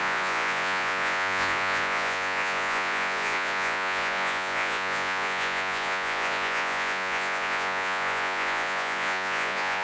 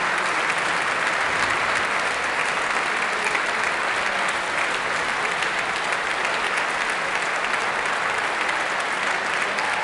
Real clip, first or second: second